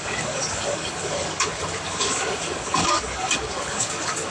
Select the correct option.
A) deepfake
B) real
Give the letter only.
A